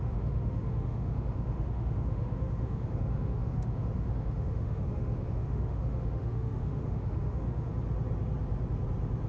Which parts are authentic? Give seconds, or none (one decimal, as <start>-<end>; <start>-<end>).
7.7-9.3